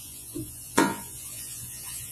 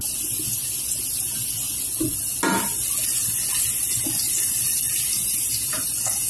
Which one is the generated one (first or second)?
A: first